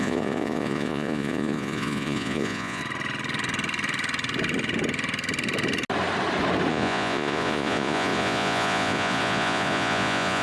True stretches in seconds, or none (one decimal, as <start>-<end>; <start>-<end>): 2.8-6.7